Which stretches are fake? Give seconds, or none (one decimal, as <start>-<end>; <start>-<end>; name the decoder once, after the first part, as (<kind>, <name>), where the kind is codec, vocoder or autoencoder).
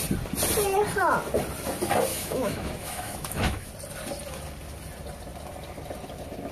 2.1-3.7 (autoencoder, DAC-VAE)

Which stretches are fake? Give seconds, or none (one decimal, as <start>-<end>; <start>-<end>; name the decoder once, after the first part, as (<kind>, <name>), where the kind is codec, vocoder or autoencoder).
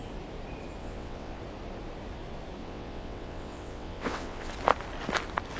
0.8-1.4 (vocoder, WaveNeXt); 2.6-4.5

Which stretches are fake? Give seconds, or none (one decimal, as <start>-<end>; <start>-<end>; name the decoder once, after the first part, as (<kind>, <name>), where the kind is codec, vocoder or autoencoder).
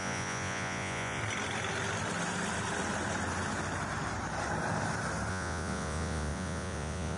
0.0-1.2 (vocoder, Vocos); 5.3-7.2